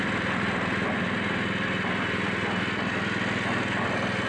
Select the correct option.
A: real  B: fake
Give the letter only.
A